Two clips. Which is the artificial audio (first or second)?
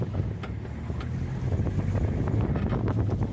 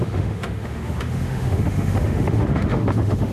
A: second